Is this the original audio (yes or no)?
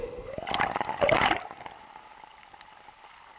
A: yes